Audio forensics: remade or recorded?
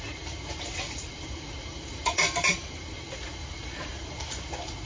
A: remade